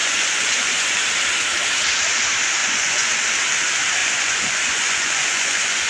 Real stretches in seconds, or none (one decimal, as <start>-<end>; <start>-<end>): 1.1-2.6; 3.2-4.0